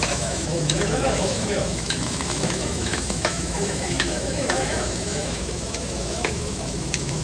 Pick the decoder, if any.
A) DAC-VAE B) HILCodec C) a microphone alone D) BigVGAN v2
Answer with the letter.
A